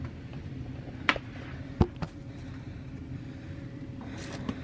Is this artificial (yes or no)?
no